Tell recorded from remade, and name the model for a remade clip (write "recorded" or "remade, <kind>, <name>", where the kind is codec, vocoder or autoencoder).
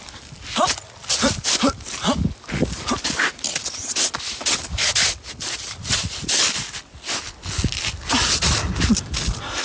recorded